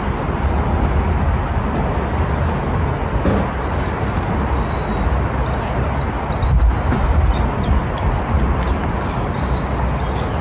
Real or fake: real